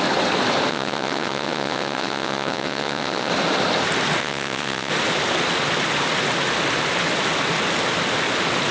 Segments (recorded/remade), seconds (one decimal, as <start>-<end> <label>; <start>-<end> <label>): 0.0-0.7 recorded; 0.7-3.3 remade; 3.3-4.2 recorded; 4.2-4.9 remade; 4.9-8.7 recorded